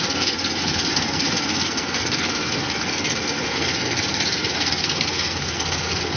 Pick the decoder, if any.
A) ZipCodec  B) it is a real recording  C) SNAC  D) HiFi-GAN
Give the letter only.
C